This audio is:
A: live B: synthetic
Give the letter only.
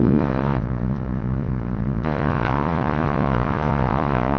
B